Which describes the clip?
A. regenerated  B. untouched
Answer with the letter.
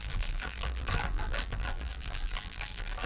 A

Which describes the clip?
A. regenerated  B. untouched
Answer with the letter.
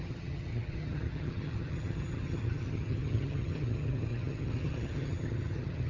A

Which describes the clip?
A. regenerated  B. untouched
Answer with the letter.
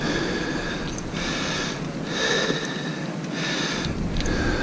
B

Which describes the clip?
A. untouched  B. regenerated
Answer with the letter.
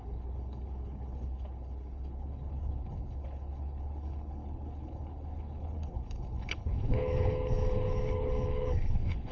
B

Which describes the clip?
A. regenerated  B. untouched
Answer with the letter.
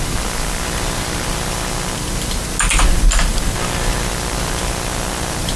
B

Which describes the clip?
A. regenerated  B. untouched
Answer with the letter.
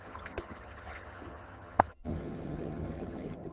A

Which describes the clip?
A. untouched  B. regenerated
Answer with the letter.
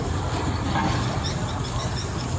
A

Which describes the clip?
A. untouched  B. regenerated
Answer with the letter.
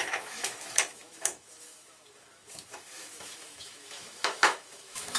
B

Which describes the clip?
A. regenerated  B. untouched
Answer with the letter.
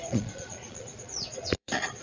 A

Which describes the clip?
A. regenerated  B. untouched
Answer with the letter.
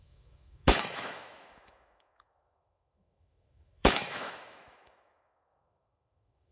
A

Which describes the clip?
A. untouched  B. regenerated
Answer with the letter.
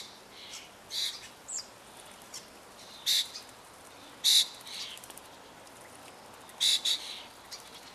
A